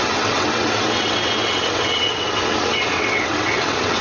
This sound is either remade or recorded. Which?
remade